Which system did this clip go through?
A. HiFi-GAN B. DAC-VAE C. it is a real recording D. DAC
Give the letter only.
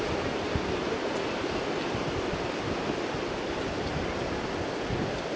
C